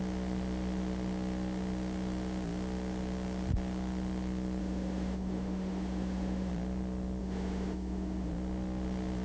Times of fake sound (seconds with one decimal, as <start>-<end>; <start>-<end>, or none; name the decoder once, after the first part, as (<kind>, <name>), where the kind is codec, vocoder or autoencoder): 4.6-6.5 (autoencoder, DAC-VAE); 7.2-8.3